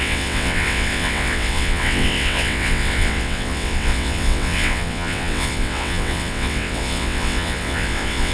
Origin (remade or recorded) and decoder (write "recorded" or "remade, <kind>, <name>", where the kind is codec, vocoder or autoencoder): remade, vocoder, WaveNeXt